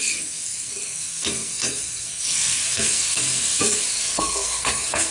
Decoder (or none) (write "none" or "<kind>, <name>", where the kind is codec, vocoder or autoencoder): codec, SNAC